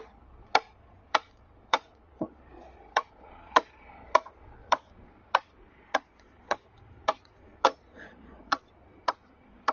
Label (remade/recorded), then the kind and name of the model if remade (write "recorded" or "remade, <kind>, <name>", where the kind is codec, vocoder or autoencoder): remade, vocoder, Vocos